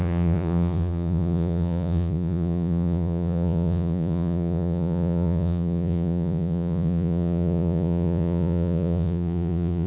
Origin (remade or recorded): remade